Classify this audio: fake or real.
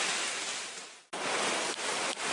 real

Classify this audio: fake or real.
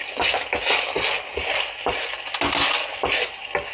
real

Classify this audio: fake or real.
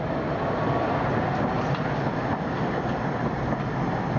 real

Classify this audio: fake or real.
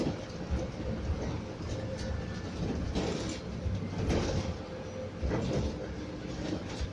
real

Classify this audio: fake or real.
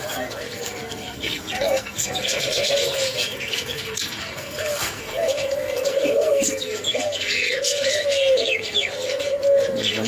fake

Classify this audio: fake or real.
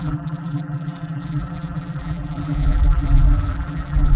fake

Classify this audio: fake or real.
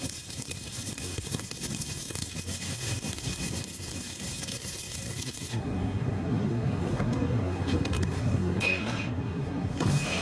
fake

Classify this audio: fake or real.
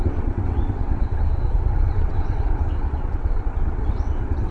fake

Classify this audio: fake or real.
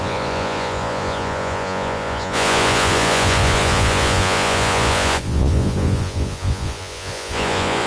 fake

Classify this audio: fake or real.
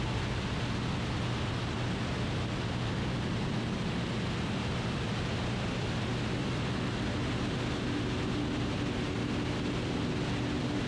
real